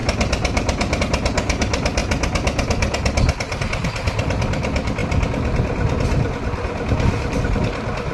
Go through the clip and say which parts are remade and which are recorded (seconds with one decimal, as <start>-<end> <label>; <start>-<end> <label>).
0.0-1.0 remade; 1.0-8.1 recorded